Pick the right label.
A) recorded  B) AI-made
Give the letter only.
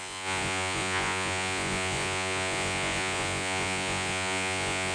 B